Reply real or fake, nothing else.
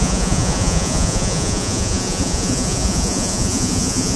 fake